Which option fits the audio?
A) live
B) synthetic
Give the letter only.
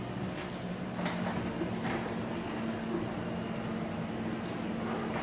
A